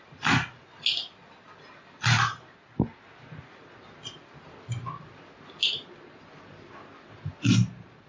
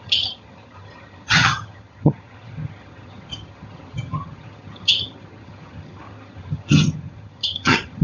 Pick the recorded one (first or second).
first